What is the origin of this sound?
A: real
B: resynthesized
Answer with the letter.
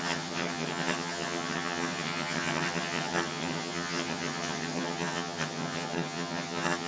B